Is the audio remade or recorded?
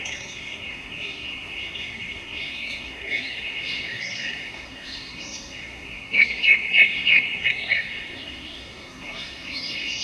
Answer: remade